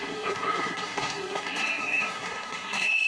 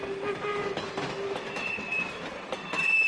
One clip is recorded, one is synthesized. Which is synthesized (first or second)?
first